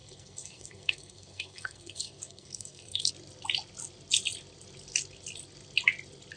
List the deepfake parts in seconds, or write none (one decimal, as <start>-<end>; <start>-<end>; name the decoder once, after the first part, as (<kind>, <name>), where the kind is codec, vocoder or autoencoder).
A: 0.0-3.1 (codec, SNAC)